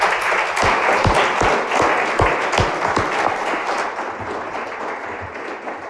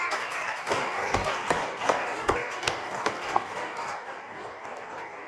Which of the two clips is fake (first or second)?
second